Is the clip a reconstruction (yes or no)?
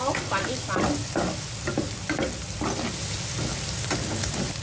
no